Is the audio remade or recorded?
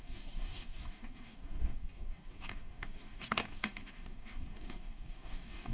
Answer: remade